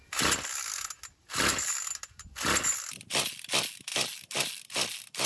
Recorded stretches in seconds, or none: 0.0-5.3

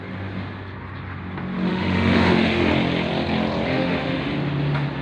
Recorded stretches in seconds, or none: 0.0-1.7; 2.7-3.7; 4.3-5.0

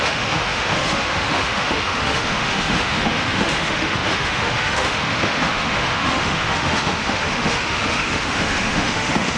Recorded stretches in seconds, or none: none